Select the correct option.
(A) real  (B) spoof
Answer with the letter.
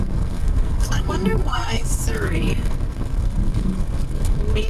B